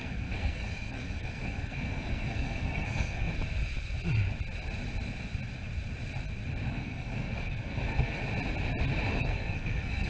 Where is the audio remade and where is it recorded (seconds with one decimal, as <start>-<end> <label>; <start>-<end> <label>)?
0.0-3.3 remade; 3.3-6.7 recorded; 6.7-8.2 remade; 8.2-9.1 recorded; 9.1-10.1 remade